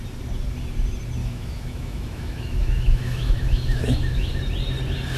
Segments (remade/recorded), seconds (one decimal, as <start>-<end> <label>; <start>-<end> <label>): 0.0-1.2 recorded; 1.2-4.3 remade; 4.3-5.2 recorded